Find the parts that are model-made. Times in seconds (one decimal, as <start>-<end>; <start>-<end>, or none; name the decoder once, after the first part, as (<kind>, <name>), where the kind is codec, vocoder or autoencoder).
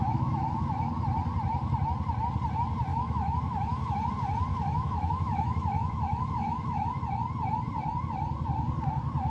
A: 0.0-0.9 (autoencoder, DAC-VAE); 2.9-4.1; 4.5-7.0